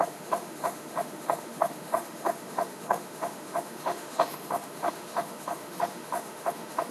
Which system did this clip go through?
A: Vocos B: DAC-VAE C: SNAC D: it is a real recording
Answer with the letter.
B